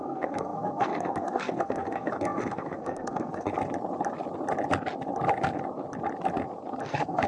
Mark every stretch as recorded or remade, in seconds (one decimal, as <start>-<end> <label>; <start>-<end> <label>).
0.0-3.5 remade; 3.5-6.8 recorded; 6.8-7.3 remade